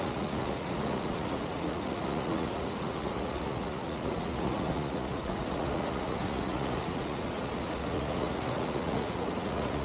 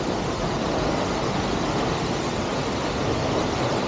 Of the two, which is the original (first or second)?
second